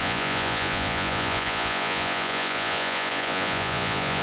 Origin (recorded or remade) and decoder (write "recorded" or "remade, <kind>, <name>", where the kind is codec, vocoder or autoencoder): remade, vocoder, Vocos